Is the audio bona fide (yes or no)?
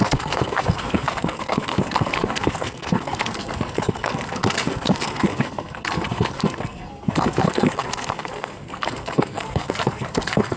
no